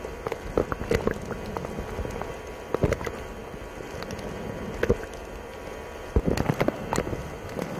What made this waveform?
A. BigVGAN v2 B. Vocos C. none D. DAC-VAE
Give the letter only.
C